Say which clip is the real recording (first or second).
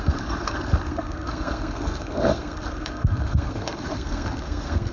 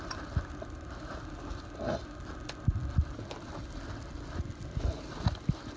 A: second